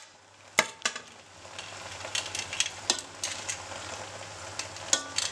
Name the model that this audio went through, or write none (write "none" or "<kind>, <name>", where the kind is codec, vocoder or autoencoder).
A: none